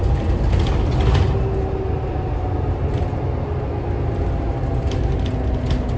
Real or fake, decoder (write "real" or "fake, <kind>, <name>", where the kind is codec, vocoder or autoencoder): real